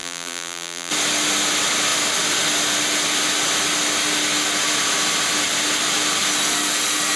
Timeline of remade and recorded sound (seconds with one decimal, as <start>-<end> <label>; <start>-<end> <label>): 0.0-0.9 remade; 0.9-7.2 recorded

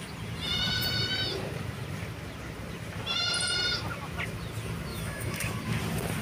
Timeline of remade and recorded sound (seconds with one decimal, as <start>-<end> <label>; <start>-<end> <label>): 0.0-4.9 recorded; 4.9-5.5 remade; 5.5-6.2 recorded

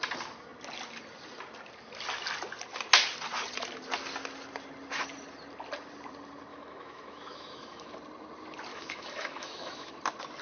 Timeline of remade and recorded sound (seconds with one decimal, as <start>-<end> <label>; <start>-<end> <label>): 0.0-6.5 recorded; 6.5-7.9 remade; 7.9-8.7 recorded; 8.7-9.9 remade; 9.9-10.4 recorded

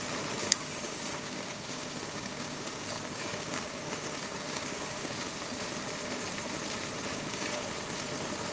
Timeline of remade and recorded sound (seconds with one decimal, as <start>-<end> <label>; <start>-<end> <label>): 0.0-0.4 recorded; 0.4-5.1 remade; 5.1-7.1 recorded; 7.1-7.7 remade; 7.7-8.5 recorded

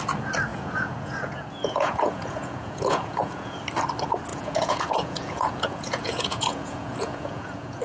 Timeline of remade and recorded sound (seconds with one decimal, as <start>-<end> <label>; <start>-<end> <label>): 0.0-0.5 recorded; 0.5-3.6 remade; 3.6-4.3 recorded; 4.3-7.8 remade

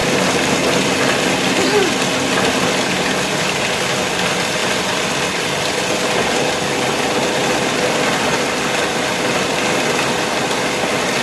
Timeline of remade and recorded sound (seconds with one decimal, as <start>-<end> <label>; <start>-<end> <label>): 0.0-11.2 recorded